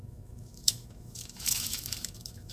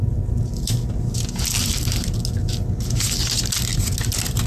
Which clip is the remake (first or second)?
first